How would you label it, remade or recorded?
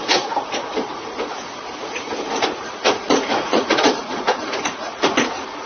remade